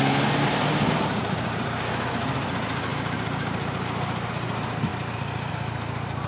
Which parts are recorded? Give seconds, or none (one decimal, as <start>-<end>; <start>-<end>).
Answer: 0.0-1.2; 2.5-2.9; 4.3-6.3